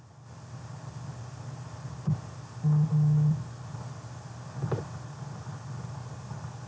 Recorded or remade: recorded